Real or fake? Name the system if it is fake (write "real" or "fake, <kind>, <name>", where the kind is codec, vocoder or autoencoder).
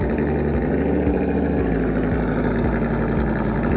real